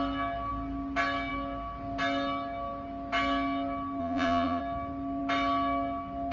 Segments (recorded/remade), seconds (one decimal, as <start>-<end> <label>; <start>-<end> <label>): 0.0-4.0 recorded; 4.0-4.6 remade; 4.6-6.3 recorded